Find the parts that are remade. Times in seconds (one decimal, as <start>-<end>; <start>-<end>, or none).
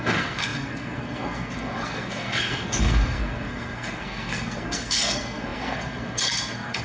0.0-6.8